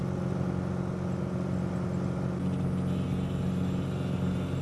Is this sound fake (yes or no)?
no